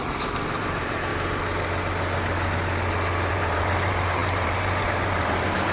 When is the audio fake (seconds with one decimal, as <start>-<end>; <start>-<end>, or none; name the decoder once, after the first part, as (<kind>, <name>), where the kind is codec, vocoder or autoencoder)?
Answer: 0.0-1.1 (vocoder, BigVGAN v2); 3.3-5.7